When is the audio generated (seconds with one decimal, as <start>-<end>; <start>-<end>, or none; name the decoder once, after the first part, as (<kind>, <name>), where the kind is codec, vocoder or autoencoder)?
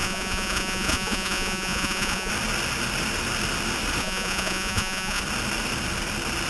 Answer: 0.0-2.3 (vocoder, Vocos); 4.0-5.2